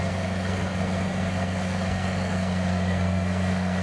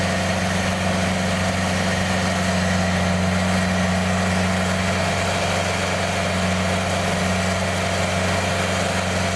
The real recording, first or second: second